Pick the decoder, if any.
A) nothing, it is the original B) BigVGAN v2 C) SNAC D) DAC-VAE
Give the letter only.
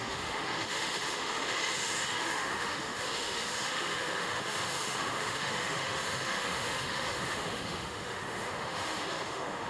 D